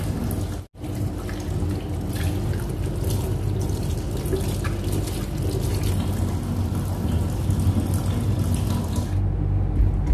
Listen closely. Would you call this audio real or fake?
real